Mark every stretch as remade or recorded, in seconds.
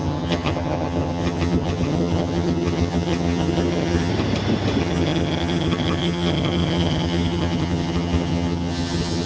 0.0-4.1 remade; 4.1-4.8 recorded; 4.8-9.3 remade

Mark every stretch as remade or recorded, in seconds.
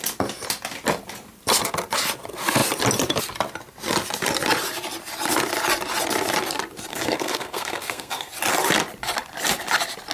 0.0-6.9 recorded; 6.9-8.3 remade; 8.3-10.1 recorded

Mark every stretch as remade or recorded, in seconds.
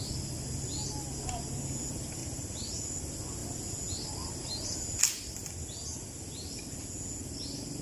0.0-2.2 recorded; 2.2-3.0 remade; 3.0-7.8 recorded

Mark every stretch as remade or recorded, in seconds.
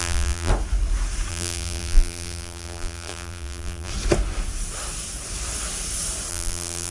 0.0-0.5 remade; 0.5-1.3 recorded; 1.3-3.9 remade; 3.9-6.3 recorded; 6.3-6.9 remade